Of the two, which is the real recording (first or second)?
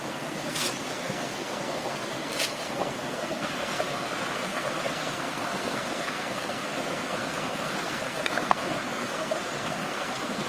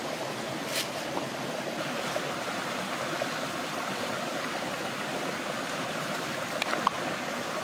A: second